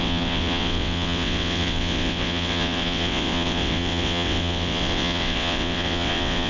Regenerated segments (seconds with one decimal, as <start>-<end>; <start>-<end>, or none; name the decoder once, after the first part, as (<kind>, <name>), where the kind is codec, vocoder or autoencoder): 0.0-6.5 (vocoder, WaveNeXt)

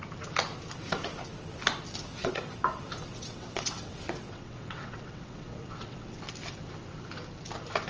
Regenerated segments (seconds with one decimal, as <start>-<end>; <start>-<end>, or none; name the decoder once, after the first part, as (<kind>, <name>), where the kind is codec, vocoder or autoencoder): 2.2-6.2 (vocoder, WaveNeXt)

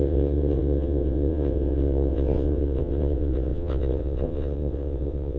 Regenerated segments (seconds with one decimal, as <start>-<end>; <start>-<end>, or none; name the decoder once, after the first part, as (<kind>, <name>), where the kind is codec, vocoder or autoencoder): 0.0-5.4 (vocoder, WaveNeXt)

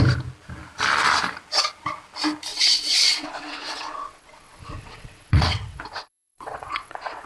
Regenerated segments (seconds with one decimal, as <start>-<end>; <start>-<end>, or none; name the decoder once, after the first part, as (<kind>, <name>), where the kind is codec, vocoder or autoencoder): 2.5-7.3 (vocoder, WaveNeXt)

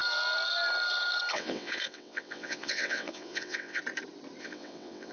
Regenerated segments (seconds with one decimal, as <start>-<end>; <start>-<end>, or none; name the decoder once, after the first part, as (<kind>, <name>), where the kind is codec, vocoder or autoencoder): 1.3-3.8 (vocoder, WaveNeXt); 4.4-5.1

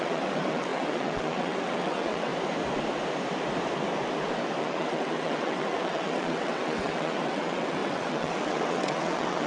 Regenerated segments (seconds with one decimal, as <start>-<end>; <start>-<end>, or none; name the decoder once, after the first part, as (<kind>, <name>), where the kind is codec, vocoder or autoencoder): 0.0-2.3 (vocoder, WaveNeXt); 4.6-9.5

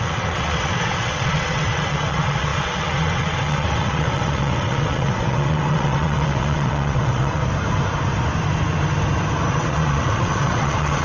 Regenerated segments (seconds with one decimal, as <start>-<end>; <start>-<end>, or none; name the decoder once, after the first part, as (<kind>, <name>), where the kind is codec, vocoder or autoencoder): 0.0-7.4 (vocoder, WaveNeXt); 9.5-11.0

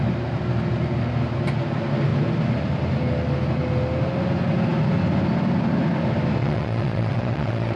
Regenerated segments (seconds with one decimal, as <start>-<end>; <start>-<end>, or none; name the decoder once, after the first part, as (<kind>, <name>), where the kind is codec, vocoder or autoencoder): 6.4-7.8 (vocoder, WaveNeXt)